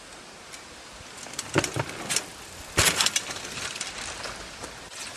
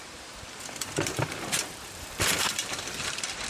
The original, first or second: first